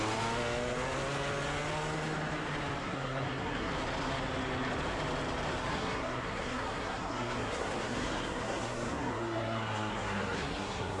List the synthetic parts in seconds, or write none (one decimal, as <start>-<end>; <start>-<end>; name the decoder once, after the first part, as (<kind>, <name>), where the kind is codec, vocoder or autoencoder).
2.8-3.7 (codec, SNAC); 5.7-11.0